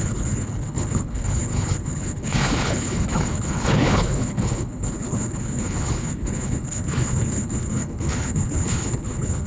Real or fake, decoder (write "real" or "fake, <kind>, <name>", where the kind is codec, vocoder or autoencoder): fake, codec, HILCodec